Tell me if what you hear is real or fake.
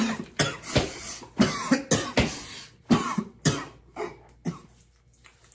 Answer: real